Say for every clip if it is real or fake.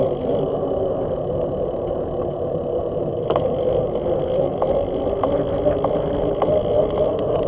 real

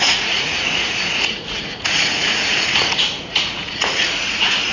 fake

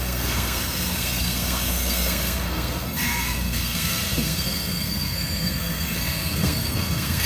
fake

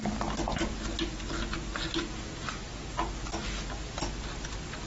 real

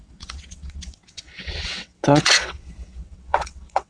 fake